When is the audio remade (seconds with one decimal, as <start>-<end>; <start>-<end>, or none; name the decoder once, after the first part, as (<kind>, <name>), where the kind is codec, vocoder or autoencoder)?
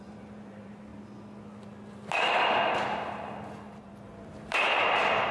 0.0-0.9 (vocoder, BigVGAN v2); 3.8-5.3